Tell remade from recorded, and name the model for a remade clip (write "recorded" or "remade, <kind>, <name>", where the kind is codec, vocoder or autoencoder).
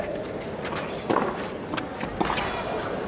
recorded